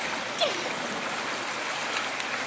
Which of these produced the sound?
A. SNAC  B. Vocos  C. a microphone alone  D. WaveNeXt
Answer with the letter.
C